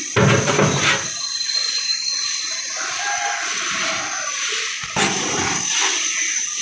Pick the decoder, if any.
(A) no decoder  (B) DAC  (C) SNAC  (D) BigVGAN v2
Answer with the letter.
A